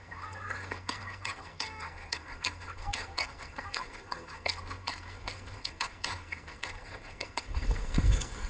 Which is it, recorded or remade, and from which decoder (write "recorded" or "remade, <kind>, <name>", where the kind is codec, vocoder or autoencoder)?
remade, codec, SNAC